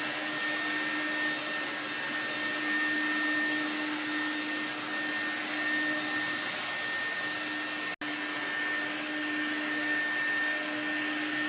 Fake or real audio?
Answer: real